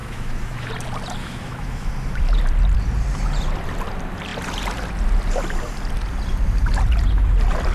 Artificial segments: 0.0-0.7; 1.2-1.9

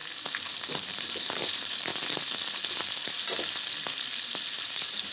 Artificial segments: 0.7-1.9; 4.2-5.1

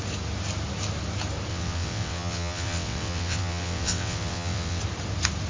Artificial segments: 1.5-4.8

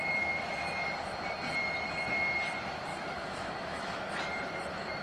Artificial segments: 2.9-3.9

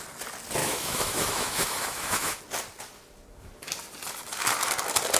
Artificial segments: 0.6-2.4

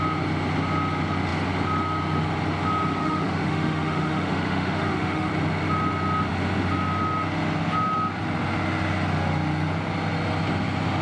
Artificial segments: 3.0-5.3

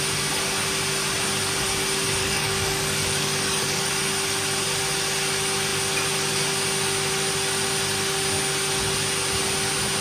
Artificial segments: 2.2-3.9

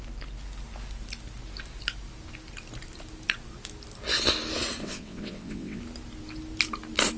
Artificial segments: 4.8-5.8